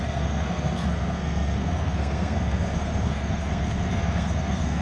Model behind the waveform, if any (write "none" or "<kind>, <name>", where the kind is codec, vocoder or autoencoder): codec, SNAC